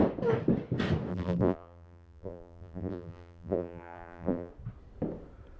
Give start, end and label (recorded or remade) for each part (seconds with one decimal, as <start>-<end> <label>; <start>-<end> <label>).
0.0-1.1 recorded; 1.1-4.5 remade; 4.5-5.6 recorded